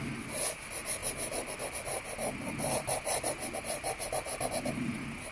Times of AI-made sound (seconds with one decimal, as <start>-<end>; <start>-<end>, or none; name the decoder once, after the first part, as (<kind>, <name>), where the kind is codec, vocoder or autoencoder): none